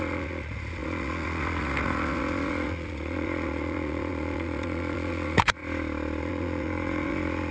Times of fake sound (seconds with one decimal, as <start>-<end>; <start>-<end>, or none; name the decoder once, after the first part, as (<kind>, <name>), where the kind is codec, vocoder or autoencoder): 0.0-5.6 (vocoder, Vocos); 6.2-7.5